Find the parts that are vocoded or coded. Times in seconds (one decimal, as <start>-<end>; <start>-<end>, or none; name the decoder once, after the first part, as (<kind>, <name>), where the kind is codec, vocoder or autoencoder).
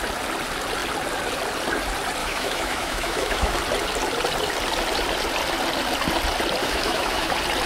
2.2-3.6 (autoencoder, DAC-VAE); 6.6-7.3